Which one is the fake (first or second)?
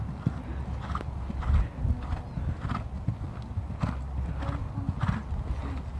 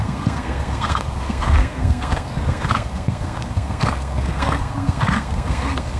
second